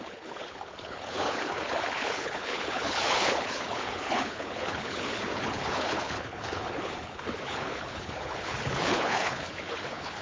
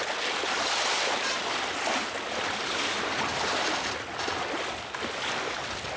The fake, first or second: first